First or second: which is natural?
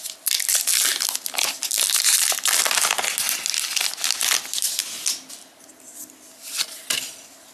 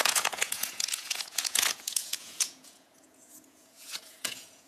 first